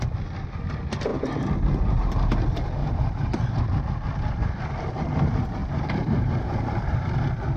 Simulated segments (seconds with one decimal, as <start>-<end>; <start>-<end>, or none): 2.8-3.8; 5.6-7.0